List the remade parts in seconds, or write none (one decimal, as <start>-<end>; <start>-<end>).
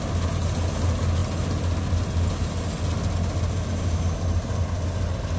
none